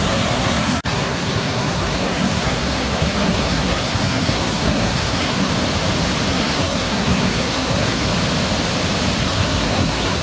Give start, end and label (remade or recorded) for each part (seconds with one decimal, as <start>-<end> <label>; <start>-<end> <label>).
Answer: 0.0-5.5 remade; 5.5-6.3 recorded; 6.3-8.1 remade; 8.1-9.2 recorded; 9.2-10.2 remade